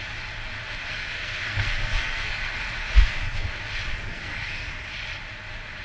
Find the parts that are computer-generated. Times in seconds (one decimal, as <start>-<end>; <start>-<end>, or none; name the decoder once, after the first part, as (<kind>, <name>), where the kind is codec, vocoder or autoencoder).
0.8-3.5 (codec, SNAC); 3.9-4.7